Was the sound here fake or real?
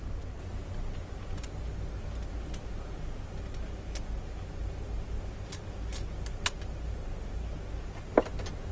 real